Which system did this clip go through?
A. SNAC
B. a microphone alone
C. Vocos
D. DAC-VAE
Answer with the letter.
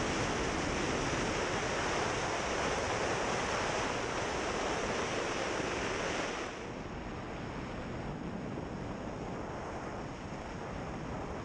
B